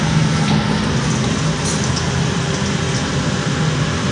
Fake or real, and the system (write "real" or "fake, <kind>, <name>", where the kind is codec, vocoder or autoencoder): real